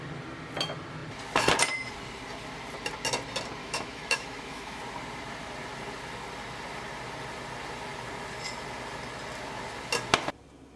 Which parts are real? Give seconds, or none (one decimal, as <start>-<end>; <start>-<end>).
0.0-3.6; 4.8-10.8